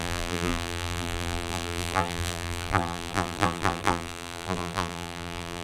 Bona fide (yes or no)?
no